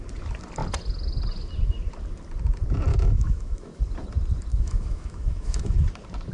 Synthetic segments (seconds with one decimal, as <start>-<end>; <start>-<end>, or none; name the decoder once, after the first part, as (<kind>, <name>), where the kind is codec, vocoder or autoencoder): 2.9-3.8 (autoencoder, DAC-VAE); 4.5-5.8

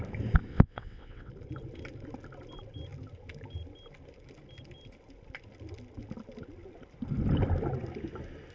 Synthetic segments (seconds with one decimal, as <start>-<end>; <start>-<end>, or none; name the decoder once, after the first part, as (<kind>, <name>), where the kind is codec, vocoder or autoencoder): 0.5-1.3 (vocoder, WaveNeXt)

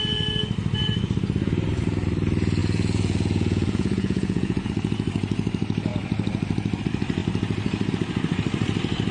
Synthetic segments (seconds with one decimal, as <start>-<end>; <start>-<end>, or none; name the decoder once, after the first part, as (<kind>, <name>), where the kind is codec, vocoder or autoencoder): 2.6-4.7 (vocoder, Vocos)

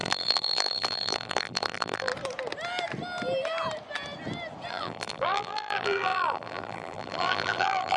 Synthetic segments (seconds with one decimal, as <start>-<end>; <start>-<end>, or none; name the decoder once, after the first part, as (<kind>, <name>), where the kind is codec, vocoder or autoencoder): 0.0-2.1 (vocoder, BigVGAN v2); 4.7-8.0

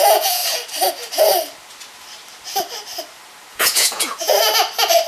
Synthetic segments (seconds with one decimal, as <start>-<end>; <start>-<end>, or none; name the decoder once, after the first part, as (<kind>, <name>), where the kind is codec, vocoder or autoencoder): 0.0-0.4 (vocoder, Vocos); 3.5-4.3

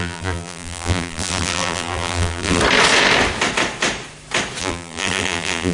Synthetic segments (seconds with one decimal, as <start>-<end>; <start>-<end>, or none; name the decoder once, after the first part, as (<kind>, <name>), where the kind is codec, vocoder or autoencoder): 0.0-2.6 (vocoder, BigVGAN v2); 4.6-5.7